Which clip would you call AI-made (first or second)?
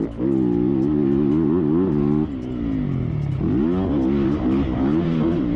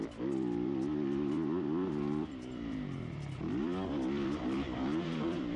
second